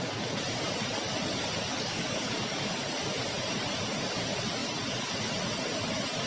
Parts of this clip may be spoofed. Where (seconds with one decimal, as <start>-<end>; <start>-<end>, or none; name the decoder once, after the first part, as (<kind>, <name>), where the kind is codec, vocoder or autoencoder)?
1.7-2.7 (codec, DAC)